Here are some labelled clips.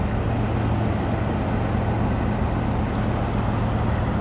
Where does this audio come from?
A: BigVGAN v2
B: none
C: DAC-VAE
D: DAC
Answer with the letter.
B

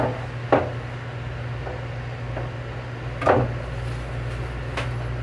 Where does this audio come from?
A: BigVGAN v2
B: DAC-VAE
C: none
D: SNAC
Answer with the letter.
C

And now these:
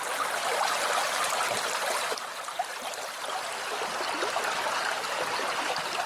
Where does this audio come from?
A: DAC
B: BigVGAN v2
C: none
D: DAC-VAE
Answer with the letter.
C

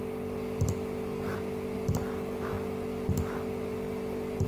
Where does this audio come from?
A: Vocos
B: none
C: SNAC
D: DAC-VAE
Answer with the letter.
B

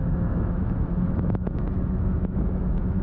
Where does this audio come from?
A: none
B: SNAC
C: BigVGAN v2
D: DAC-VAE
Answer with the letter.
D